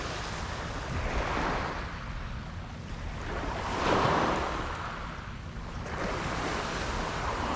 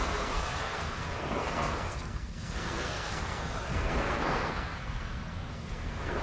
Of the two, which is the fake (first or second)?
second